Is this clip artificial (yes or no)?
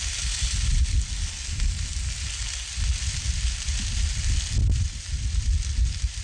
no